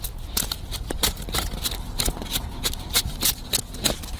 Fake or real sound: fake